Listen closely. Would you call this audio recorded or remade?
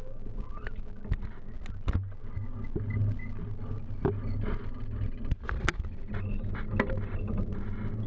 recorded